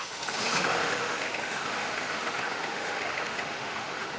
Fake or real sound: fake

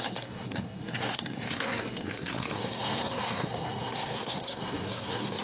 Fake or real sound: fake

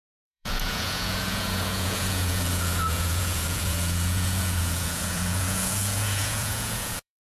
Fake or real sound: fake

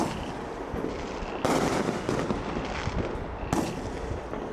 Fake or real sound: real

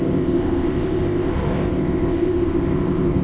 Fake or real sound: fake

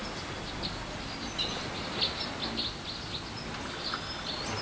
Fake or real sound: real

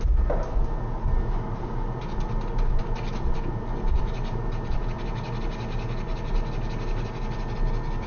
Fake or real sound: real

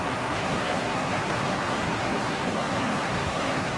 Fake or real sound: fake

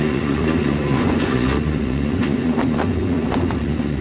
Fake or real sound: fake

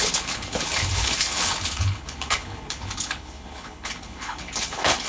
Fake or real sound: fake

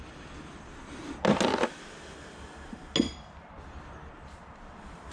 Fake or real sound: real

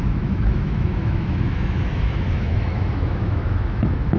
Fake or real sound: fake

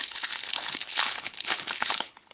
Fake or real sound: fake